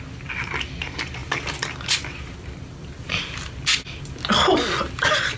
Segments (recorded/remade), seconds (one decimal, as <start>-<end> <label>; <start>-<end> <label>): 0.0-5.4 recorded

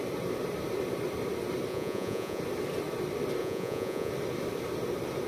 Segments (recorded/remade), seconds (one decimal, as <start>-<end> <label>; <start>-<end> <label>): 0.0-1.7 recorded; 1.7-2.4 remade; 2.4-3.4 recorded; 3.4-4.1 remade; 4.1-5.3 recorded

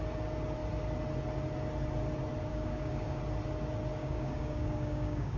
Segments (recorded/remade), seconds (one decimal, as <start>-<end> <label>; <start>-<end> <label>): 0.0-2.5 recorded; 2.5-3.2 remade; 3.2-4.0 recorded; 4.0-5.4 remade

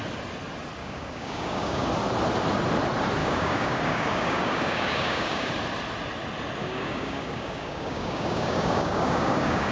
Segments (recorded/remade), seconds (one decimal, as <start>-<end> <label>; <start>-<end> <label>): 0.0-0.8 recorded; 0.8-1.9 remade; 1.9-3.2 recorded; 3.2-5.5 remade; 5.5-6.6 recorded; 6.6-9.7 remade

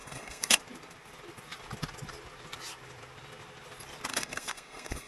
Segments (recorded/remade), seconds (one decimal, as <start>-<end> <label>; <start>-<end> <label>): 0.0-0.6 remade; 0.6-4.1 recorded; 4.1-5.1 remade

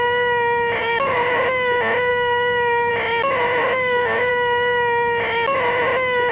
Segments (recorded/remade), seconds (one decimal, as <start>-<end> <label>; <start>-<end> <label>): 0.0-0.8 recorded; 0.8-1.4 remade; 1.4-2.1 recorded; 2.1-2.9 remade; 2.9-3.6 recorded; 3.6-4.3 remade; 4.3-6.3 recorded